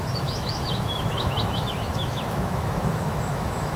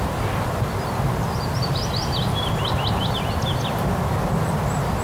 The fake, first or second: first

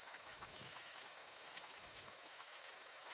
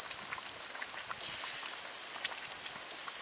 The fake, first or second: first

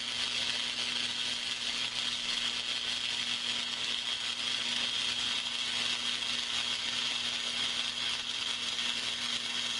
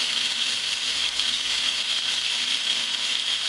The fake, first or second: second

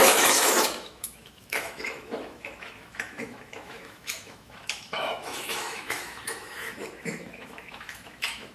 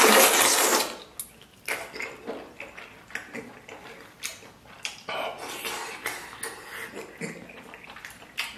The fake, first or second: first